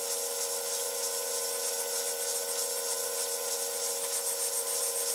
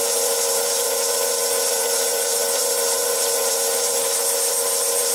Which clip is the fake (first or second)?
second